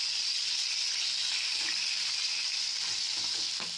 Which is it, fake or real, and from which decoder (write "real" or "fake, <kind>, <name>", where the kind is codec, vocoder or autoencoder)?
real